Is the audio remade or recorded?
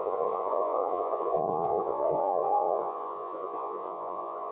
remade